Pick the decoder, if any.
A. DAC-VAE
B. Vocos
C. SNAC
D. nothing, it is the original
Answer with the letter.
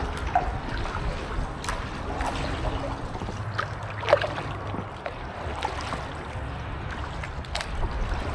D